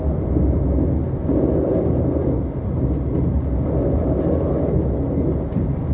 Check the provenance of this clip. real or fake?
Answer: real